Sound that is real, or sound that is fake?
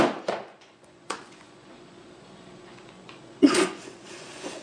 fake